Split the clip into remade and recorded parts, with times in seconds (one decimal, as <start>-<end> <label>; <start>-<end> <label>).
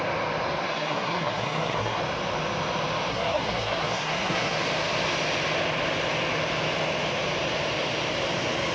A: 0.0-0.6 recorded; 0.6-2.0 remade; 2.0-3.1 recorded; 3.1-4.6 remade; 4.6-8.7 recorded